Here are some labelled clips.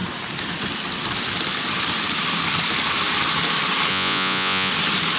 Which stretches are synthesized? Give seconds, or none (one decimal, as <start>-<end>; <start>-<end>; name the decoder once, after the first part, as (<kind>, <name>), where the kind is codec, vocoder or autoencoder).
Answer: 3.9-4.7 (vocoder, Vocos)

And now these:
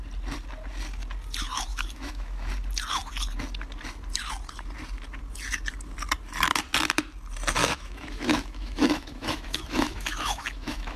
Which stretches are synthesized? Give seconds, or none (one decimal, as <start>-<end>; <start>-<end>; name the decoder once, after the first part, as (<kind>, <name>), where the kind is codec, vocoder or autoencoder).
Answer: 1.7-2.5 (autoencoder, DAC-VAE); 7.6-11.0

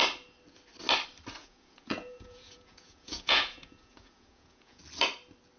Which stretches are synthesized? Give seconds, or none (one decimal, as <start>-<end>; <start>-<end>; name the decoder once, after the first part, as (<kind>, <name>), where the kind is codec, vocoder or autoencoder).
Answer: 1.4-4.8 (vocoder, Vocos)

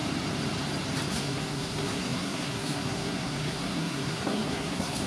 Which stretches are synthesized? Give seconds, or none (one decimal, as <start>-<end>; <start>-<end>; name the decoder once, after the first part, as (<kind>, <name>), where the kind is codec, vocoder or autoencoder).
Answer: 1.1-5.1 (codec, SNAC)